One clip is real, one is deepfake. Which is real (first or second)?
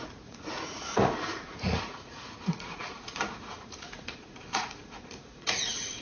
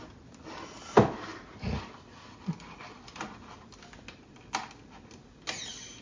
second